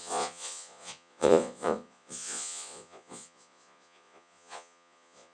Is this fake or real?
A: fake